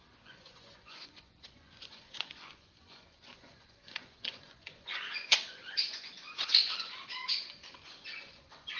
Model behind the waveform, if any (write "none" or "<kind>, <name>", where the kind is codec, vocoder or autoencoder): vocoder, Vocos